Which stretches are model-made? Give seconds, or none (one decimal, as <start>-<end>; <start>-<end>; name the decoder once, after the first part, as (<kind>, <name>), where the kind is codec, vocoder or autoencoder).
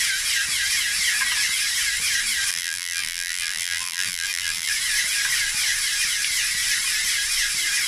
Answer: 2.5-4.7 (vocoder, BigVGAN v2)